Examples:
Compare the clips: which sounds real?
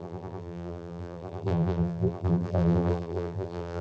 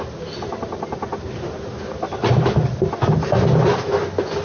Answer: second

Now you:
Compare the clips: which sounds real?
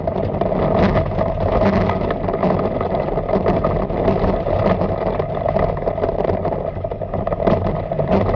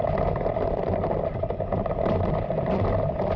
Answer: first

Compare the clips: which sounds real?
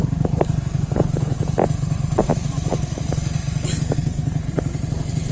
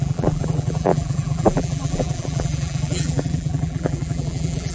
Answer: first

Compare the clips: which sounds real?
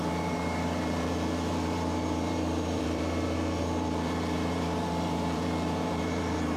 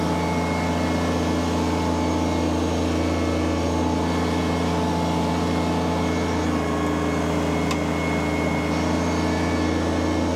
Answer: second